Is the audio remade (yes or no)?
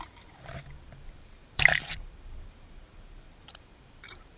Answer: yes